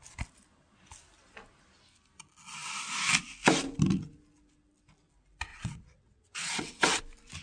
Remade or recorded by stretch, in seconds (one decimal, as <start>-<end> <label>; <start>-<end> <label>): 0.0-5.5 recorded; 5.5-7.0 remade; 7.0-7.4 recorded